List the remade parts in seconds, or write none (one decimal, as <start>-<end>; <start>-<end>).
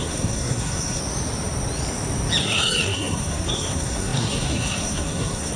0.0-1.0; 2.4-5.6